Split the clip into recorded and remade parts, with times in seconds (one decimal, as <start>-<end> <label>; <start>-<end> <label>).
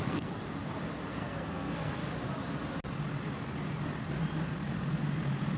0.0-0.4 remade; 0.4-1.1 recorded; 1.1-2.0 remade; 2.0-5.6 recorded